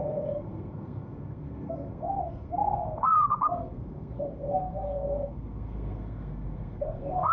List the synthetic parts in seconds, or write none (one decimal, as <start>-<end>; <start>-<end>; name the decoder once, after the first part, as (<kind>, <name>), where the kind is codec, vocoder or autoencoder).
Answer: 0.0-7.3 (codec, SNAC)